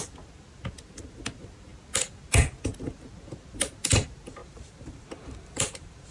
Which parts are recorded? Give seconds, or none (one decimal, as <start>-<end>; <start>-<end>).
0.0-4.4